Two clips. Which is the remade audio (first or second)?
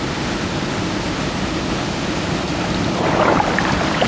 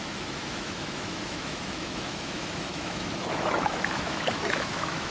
second